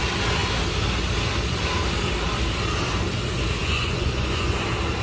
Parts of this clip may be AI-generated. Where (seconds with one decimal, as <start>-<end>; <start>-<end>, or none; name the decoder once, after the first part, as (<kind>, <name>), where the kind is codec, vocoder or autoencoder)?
3.6-4.6 (vocoder, Vocos)